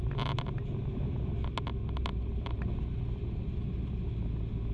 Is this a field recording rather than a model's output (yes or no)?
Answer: yes